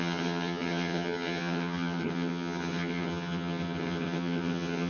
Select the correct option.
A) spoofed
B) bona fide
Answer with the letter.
A